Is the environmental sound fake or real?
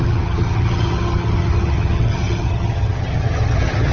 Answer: fake